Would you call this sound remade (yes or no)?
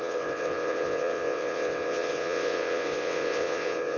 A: yes